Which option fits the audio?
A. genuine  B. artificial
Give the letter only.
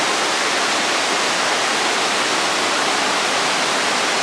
A